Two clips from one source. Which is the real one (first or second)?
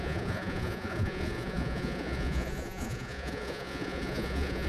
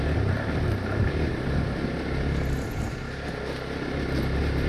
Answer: second